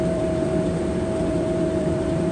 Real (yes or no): no